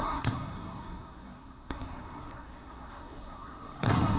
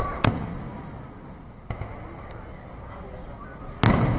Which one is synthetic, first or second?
first